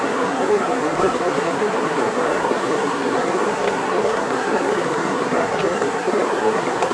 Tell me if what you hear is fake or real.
fake